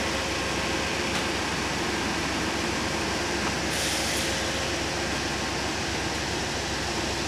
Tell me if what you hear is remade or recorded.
recorded